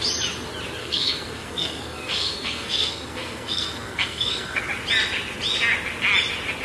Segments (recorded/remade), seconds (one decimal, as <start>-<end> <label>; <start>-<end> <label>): 0.0-0.8 recorded; 0.8-4.6 remade; 4.6-6.6 recorded